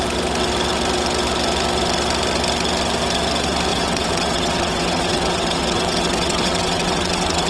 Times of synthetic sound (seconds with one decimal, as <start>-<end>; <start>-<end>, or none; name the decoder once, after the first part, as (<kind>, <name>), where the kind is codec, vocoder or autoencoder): 3.7-7.5 (vocoder, WaveNeXt)